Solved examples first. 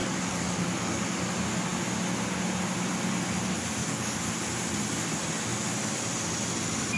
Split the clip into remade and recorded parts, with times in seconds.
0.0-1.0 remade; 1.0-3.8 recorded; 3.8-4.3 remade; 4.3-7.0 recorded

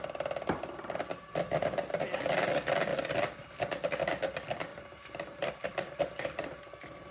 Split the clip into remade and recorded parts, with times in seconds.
0.0-4.7 recorded; 4.7-6.6 remade; 6.6-7.1 recorded

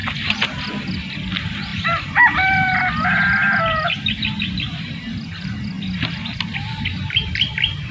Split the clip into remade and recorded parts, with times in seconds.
0.0-1.1 recorded; 1.1-1.7 remade; 1.7-3.6 recorded; 3.6-7.9 remade

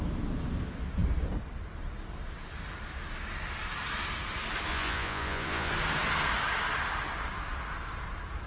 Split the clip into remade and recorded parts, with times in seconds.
0.0-4.7 recorded; 4.7-5.7 remade; 5.7-8.5 recorded

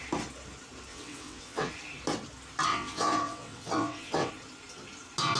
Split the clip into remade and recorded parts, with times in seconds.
0.0-0.9 recorded; 0.9-1.7 remade; 1.7-2.7 recorded; 2.7-4.3 remade; 4.3-5.4 recorded